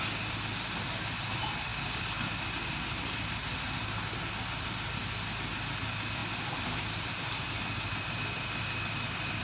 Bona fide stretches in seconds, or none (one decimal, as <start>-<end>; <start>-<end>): 0.0-9.4